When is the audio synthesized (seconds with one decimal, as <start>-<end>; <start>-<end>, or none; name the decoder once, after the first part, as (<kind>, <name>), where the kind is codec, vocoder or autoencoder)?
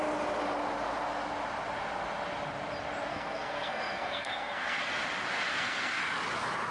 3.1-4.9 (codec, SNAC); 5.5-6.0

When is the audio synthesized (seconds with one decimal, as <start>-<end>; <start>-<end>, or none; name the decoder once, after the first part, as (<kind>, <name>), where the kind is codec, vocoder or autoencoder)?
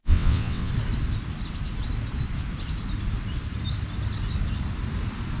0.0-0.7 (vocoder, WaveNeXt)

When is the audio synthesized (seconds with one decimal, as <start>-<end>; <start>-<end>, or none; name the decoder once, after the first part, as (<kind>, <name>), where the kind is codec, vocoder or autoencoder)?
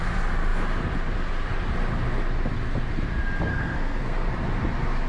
3.5-4.3 (codec, SNAC)